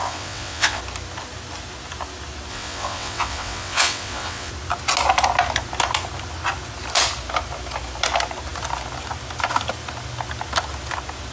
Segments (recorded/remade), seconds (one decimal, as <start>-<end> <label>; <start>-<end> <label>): 0.0-0.8 remade; 0.8-2.5 recorded; 2.5-4.5 remade; 4.5-11.3 recorded